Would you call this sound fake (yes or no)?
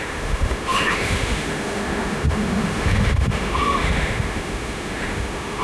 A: yes